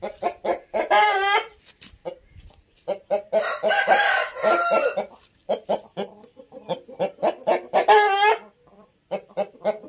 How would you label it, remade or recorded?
recorded